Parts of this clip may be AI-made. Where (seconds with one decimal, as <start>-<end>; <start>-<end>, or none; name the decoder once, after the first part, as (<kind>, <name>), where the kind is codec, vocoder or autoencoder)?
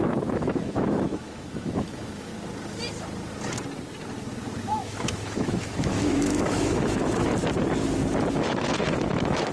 0.0-2.3 (autoencoder, DAC-VAE); 4.6-7.3; 8.3-9.5